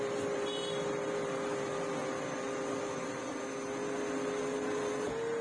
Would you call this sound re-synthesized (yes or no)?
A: no